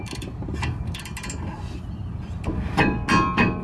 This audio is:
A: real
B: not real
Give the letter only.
A